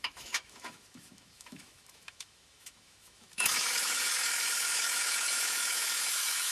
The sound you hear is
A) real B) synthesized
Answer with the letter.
B